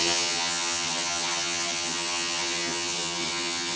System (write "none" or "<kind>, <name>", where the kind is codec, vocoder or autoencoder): vocoder, HiFi-GAN